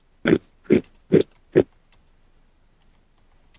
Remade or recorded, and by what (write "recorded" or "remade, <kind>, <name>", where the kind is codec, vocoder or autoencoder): recorded